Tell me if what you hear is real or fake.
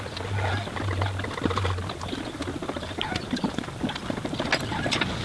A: real